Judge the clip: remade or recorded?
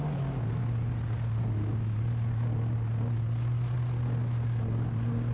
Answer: recorded